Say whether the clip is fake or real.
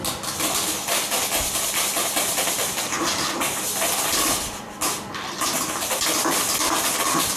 real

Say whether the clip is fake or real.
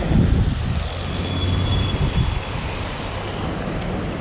real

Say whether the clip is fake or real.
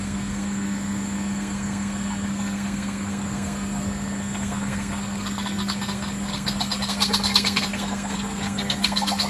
fake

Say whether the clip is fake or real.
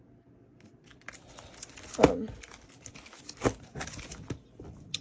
real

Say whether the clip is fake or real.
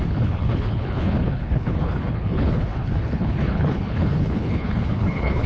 fake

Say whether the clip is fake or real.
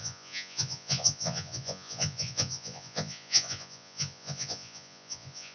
fake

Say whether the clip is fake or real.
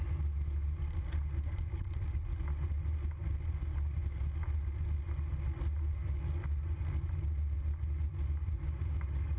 real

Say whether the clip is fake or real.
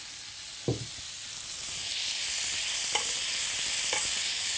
real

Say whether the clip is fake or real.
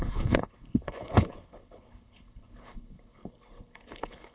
fake